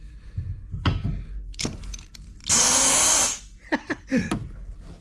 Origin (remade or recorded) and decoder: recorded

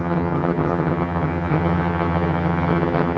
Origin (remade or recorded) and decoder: remade, vocoder, HiFi-GAN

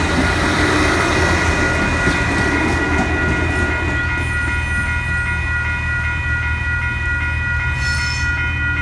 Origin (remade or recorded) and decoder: recorded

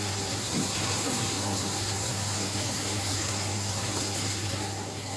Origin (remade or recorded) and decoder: remade, codec, SNAC